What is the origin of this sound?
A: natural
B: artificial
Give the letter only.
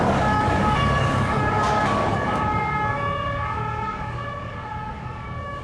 B